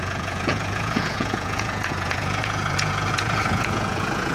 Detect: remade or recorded remade